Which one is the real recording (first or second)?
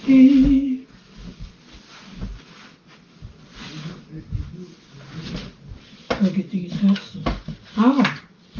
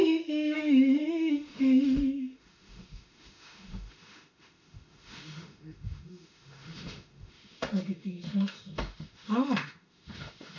first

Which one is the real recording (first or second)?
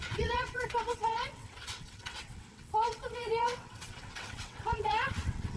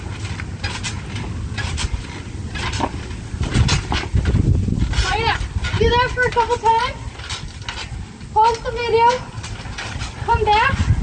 second